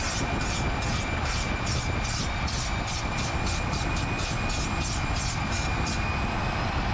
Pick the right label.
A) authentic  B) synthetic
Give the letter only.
A